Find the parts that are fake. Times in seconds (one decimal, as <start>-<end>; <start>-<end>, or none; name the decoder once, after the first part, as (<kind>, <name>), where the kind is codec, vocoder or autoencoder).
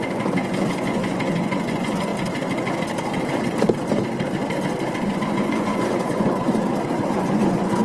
0.0-2.1 (vocoder, Vocos); 5.1-6.4; 7.0-7.8